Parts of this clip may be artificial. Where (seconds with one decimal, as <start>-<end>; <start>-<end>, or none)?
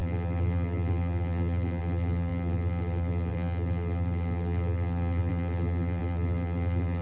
0.0-7.0